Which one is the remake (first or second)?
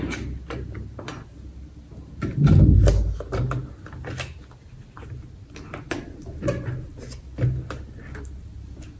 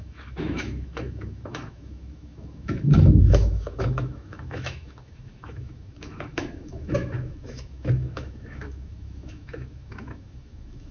second